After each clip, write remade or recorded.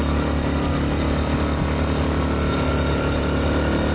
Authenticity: recorded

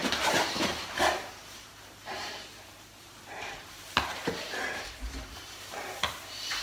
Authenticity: remade